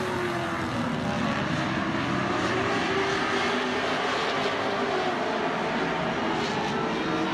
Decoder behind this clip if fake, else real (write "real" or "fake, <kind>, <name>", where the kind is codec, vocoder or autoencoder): real